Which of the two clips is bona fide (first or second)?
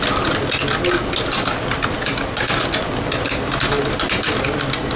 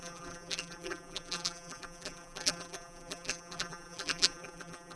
first